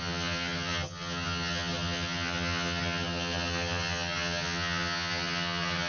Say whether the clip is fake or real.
fake